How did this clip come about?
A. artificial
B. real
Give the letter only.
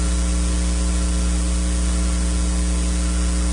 B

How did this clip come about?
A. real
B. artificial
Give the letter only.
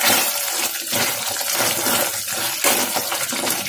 A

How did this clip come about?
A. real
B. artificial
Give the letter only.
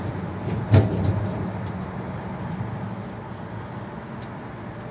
A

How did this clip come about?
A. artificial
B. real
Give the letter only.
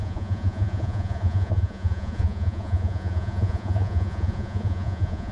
A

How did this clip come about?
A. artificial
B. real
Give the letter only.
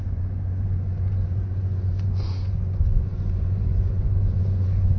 A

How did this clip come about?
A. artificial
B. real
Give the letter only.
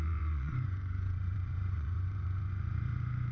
A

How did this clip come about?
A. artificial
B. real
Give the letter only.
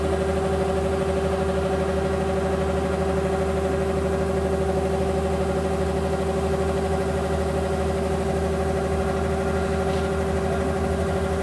B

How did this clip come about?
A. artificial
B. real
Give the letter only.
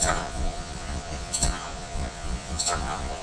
A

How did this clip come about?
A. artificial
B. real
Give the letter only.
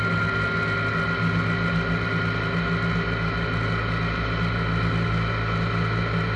B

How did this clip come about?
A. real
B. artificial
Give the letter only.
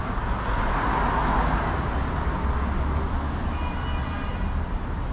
A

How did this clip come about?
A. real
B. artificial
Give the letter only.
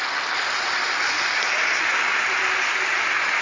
A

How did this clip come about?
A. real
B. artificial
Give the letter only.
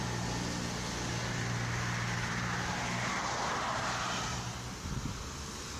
A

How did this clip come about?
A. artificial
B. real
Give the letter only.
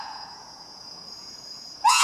A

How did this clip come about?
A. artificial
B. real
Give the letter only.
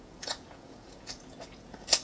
A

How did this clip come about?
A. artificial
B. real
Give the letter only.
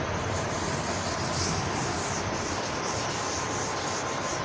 B